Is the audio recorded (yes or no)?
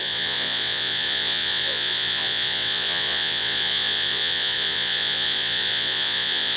no